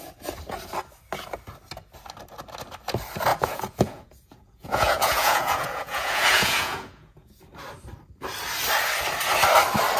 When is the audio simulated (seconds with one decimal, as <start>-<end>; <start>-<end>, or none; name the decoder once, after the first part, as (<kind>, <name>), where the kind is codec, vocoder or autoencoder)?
3.3-7.4 (vocoder, Vocos)